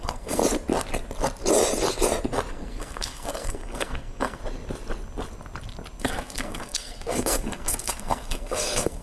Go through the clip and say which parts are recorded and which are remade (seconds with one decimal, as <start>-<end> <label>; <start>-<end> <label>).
0.0-0.4 remade; 0.4-2.5 recorded; 2.5-4.4 remade; 4.4-6.0 recorded; 6.0-9.0 remade